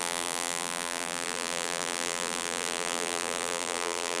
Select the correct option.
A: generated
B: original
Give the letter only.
A